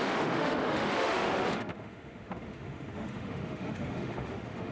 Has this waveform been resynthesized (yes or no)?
yes